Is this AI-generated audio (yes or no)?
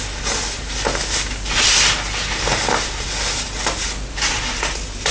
no